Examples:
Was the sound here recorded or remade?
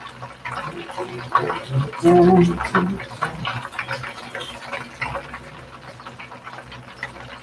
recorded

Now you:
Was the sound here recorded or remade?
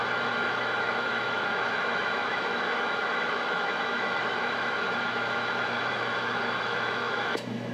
remade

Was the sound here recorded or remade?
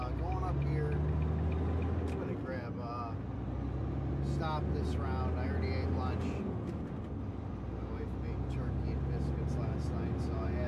recorded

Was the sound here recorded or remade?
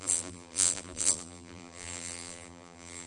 remade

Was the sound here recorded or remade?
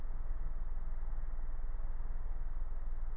recorded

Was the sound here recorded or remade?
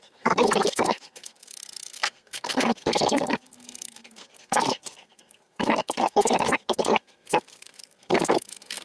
remade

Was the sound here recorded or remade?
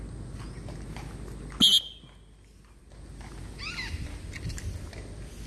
recorded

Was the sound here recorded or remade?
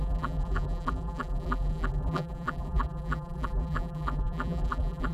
remade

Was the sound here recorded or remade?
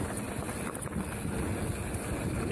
recorded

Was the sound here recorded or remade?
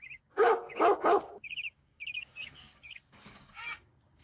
remade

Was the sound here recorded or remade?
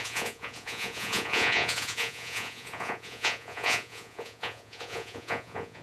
remade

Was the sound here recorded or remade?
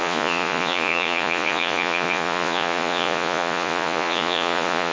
remade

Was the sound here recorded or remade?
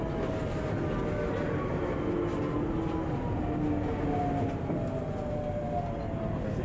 recorded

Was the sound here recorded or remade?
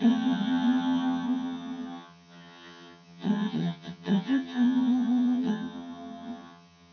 remade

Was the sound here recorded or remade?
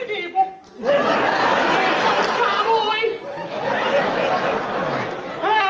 recorded